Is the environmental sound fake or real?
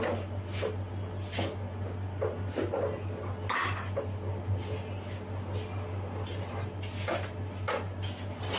real